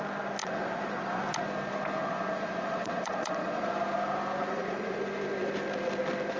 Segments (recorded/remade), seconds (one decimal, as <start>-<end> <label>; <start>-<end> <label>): 0.0-0.4 recorded; 0.4-1.2 remade; 1.2-2.0 recorded; 2.0-3.7 remade; 3.7-4.4 recorded; 4.4-5.0 remade; 5.0-6.4 recorded